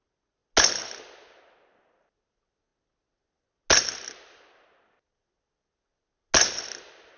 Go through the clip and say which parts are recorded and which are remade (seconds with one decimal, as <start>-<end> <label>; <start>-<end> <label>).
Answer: 0.0-7.2 recorded